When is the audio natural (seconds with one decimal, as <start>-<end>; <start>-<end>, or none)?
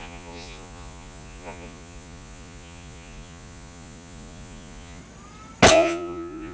5.0-5.7